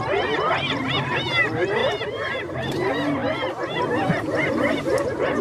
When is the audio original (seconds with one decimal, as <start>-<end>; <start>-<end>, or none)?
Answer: 3.2-3.9